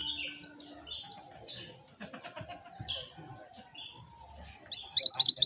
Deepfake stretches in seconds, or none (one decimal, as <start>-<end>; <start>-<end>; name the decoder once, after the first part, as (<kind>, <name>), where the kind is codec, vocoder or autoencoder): none